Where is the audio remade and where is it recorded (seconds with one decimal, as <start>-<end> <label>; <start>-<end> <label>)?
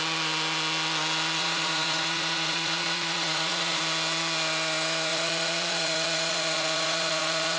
0.0-1.4 recorded; 1.4-3.8 remade; 3.8-5.1 recorded; 5.1-7.6 remade